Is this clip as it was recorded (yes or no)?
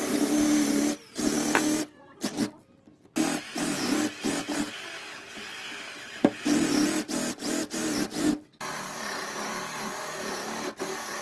yes